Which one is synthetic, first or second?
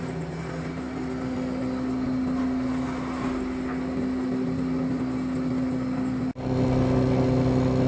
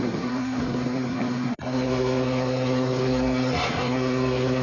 second